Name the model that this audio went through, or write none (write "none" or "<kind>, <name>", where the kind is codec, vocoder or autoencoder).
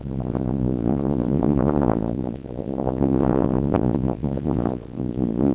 vocoder, Vocos